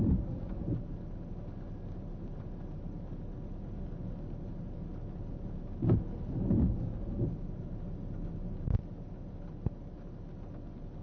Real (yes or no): yes